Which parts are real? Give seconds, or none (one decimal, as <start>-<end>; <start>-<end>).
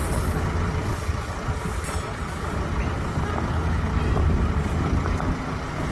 0.0-3.5; 3.9-5.9